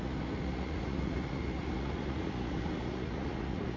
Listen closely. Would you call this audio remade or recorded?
remade